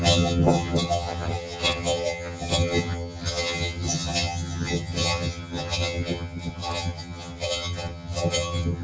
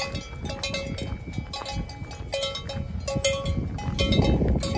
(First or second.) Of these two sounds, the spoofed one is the first